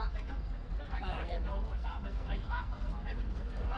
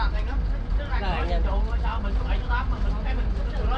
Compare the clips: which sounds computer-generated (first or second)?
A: first